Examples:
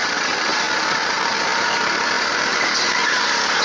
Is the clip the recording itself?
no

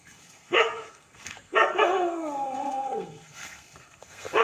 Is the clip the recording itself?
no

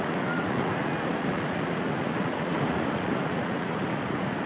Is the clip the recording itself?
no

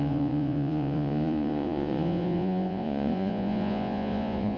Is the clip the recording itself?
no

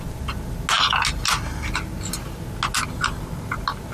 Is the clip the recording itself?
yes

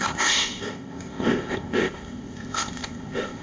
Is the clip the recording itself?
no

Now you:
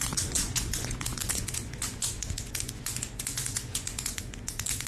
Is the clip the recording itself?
no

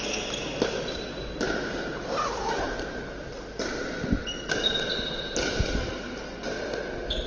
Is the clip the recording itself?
yes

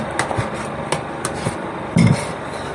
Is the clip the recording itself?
yes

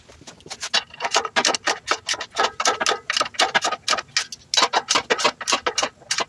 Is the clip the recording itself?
yes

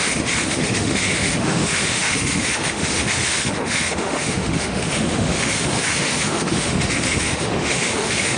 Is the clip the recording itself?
no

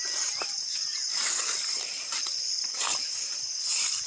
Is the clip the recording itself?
yes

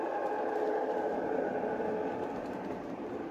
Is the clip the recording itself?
yes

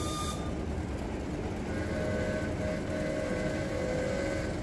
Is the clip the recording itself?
yes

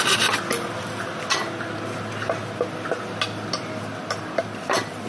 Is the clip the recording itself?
yes